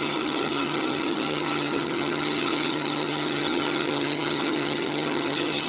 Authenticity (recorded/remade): remade